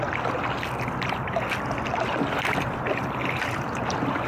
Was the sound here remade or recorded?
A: recorded